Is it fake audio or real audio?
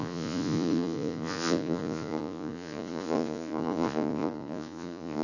fake